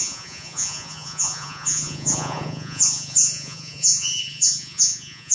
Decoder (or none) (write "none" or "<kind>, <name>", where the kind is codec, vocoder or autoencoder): vocoder, Vocos